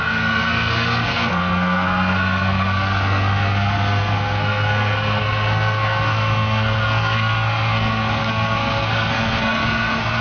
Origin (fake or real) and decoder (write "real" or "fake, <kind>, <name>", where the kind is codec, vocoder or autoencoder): fake, codec, SNAC